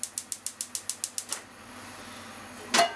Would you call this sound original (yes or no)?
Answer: yes